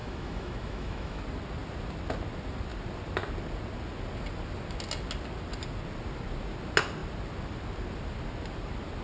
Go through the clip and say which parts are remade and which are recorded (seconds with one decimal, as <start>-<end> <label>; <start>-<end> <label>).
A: 0.0-1.2 remade; 1.2-9.0 recorded